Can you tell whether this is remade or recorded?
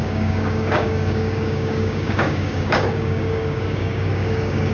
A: remade